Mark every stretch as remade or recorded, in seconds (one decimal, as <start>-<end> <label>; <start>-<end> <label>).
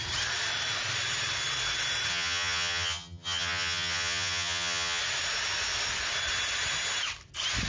0.0-2.1 recorded; 2.1-5.0 remade; 5.0-7.7 recorded